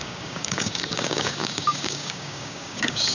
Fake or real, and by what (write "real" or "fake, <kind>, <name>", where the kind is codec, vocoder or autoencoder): fake, codec, DAC